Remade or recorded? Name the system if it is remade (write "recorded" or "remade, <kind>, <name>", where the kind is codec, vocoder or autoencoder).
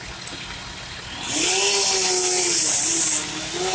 recorded